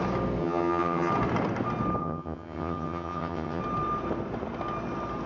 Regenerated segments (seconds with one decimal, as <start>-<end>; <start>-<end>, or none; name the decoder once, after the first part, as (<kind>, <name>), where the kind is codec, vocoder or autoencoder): 0.4-1.1 (vocoder, HiFi-GAN); 2.0-3.6